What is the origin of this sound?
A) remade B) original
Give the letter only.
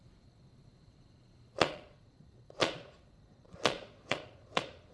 A